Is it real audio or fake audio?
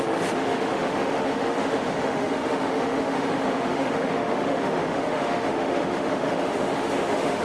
fake